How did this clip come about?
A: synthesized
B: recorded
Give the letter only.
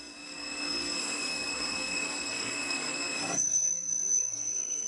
A